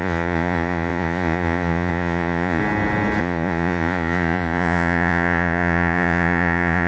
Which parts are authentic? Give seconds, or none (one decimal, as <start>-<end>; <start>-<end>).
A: 2.6-3.2